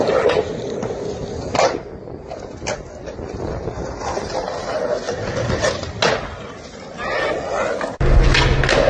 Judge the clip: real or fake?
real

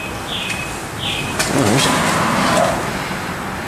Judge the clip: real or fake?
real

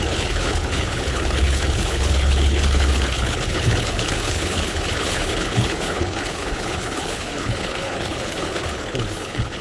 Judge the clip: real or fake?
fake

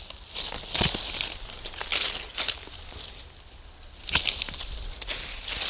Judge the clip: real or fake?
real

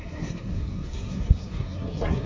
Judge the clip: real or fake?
fake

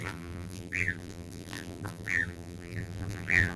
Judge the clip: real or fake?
fake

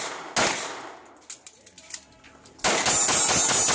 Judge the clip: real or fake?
real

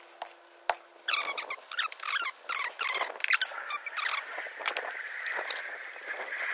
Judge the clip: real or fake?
real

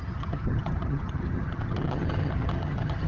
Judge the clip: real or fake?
fake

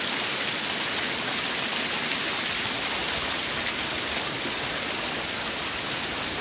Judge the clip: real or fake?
real